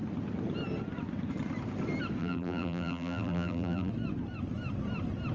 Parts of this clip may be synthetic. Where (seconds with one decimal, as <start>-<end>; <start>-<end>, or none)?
2.2-3.9